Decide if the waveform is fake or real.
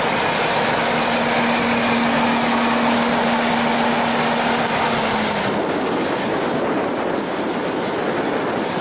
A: real